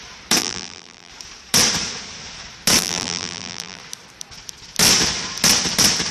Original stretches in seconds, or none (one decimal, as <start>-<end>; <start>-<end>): 0.0-0.4; 1.1-2.8; 3.8-6.1